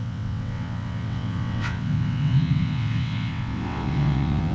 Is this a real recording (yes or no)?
no